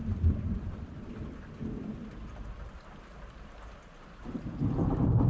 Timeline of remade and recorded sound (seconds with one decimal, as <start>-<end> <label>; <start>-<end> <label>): 0.0-2.7 remade; 2.7-5.3 recorded